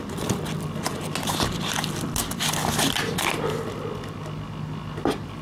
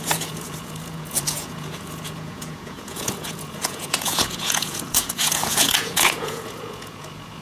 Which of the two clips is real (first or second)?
first